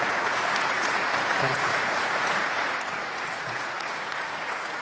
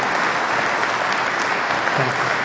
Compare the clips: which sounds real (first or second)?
second